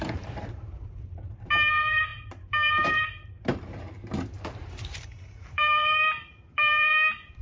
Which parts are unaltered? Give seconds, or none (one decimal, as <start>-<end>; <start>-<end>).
3.5-4.2